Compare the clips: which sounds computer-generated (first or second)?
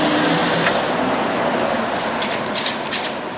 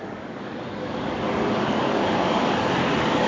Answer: second